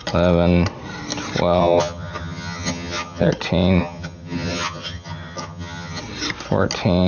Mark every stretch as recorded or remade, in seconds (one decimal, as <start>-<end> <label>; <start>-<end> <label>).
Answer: 0.0-1.6 recorded; 1.6-3.3 remade; 3.3-3.8 recorded; 3.8-6.0 remade; 6.0-7.1 recorded